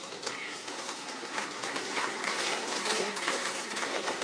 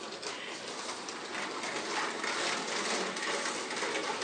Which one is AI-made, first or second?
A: first